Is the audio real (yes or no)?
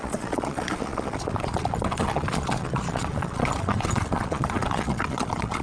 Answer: no